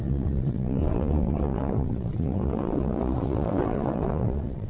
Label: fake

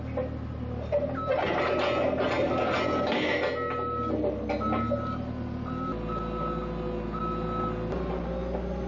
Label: real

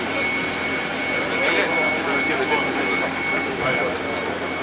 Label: real